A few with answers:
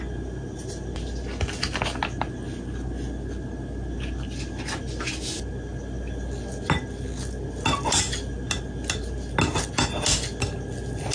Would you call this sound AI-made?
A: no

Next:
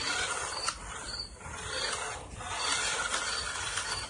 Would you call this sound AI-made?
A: no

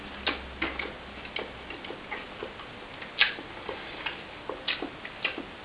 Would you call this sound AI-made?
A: no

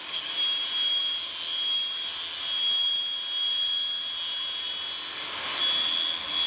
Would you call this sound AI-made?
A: no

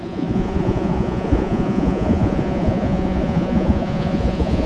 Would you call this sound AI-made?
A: yes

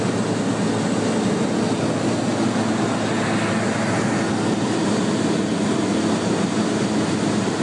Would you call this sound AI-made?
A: no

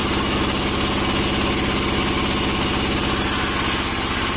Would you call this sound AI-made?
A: no